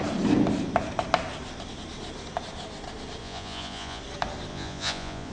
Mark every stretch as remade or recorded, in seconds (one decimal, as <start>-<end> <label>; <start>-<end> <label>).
0.0-3.2 recorded; 3.2-4.0 remade; 4.0-4.5 recorded; 4.5-5.3 remade